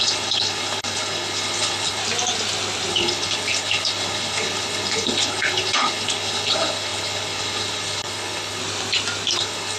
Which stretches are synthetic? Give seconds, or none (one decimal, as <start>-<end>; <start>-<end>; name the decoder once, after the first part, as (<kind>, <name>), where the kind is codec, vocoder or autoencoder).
0.0-2.0 (codec, HILCodec); 2.9-8.6; 9.4-9.8